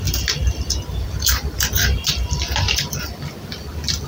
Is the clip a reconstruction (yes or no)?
yes